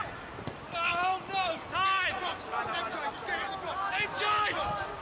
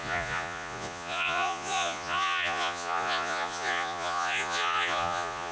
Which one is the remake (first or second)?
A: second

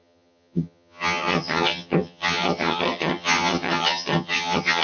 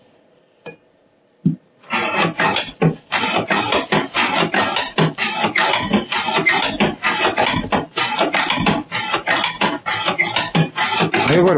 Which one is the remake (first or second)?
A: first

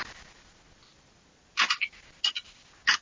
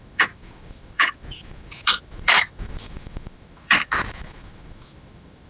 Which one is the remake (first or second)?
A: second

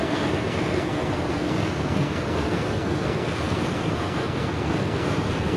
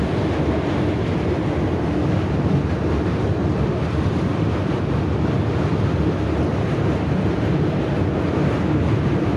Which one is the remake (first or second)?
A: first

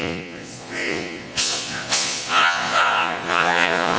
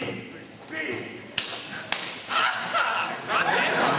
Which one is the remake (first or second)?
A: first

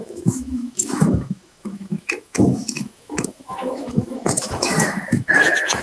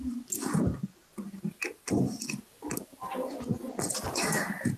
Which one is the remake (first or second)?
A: first